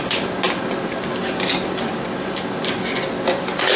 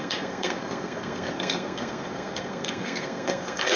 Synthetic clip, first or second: second